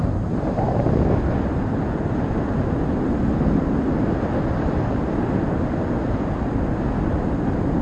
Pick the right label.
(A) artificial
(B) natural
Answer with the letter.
B